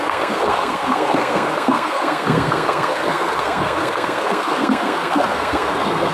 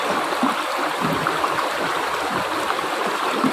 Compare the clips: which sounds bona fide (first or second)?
second